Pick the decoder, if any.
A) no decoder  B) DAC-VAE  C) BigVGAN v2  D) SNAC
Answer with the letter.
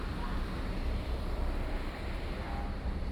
C